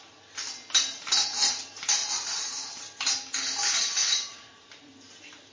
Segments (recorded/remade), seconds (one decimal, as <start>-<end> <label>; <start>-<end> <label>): 0.0-4.0 recorded; 4.0-4.7 remade; 4.7-5.5 recorded